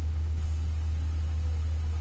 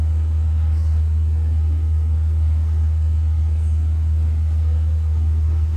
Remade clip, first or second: second